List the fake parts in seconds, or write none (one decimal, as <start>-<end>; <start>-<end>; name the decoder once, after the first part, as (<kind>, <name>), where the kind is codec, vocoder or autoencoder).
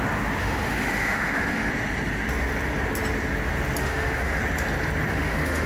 0.4-1.7 (autoencoder, DAC-VAE); 3.8-4.4; 5.1-5.7